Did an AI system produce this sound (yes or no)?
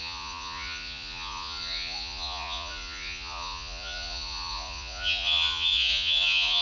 yes